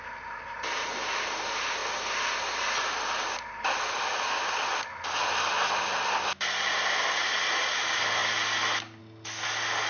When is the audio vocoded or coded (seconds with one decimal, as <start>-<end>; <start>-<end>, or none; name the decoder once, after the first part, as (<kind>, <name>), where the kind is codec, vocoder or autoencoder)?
none